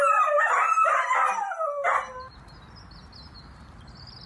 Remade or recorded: recorded